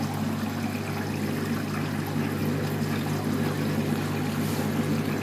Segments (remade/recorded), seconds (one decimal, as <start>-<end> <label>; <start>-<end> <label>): 0.0-5.2 recorded